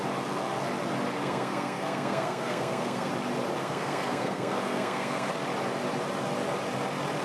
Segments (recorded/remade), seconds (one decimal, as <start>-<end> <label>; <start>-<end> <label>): 0.0-1.2 recorded; 1.2-3.1 remade; 3.1-3.6 recorded; 3.6-5.3 remade; 5.3-7.2 recorded